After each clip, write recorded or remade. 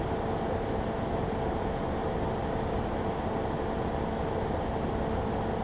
recorded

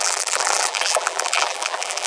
remade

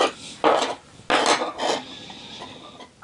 recorded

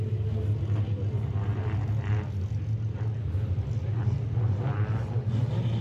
recorded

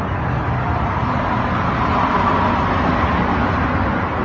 recorded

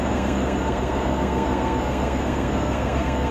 remade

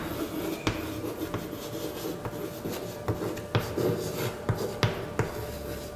recorded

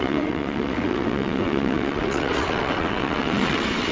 remade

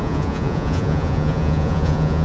remade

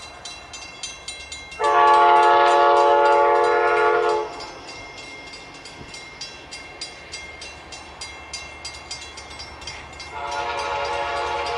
recorded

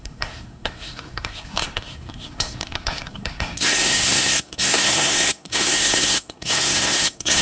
remade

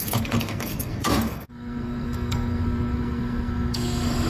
remade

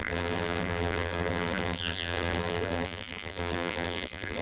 remade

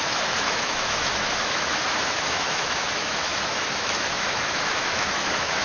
remade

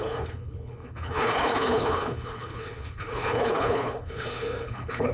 remade